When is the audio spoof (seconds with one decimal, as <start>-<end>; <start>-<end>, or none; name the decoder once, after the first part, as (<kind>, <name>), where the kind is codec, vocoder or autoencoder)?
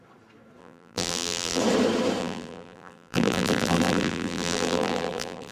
0.6-1.6 (vocoder, BigVGAN v2); 2.2-5.5